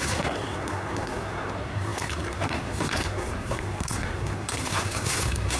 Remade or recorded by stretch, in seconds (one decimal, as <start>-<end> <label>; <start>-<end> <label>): 0.0-5.6 remade

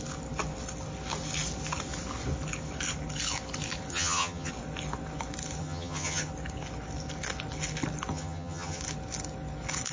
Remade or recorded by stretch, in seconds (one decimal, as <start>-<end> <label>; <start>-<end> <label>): 0.0-3.9 recorded; 3.9-4.5 remade; 4.5-5.6 recorded; 5.6-6.3 remade; 6.3-8.1 recorded; 8.1-8.8 remade; 8.8-9.9 recorded

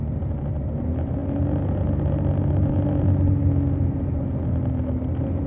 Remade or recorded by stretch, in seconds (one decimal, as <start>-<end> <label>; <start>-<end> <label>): 0.0-5.5 recorded

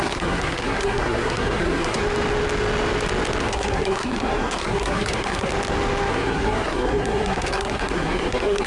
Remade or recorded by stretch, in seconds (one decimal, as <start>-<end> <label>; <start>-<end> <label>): 0.0-2.0 remade; 2.0-3.4 recorded; 3.4-5.5 remade; 5.5-6.1 recorded; 6.1-8.7 remade

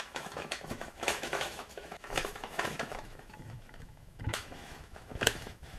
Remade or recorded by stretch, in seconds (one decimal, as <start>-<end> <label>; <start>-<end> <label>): 0.0-5.8 remade

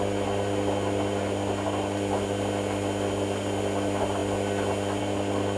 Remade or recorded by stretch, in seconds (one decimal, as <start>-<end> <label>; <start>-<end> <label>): 0.0-5.6 recorded